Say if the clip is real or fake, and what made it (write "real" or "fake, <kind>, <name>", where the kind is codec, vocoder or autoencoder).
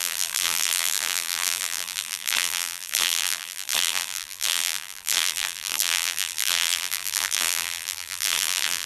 fake, vocoder, BigVGAN v2